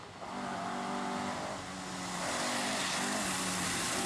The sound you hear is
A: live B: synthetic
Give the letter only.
A